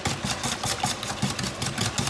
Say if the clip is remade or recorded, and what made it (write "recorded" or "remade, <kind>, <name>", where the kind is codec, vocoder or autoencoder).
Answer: recorded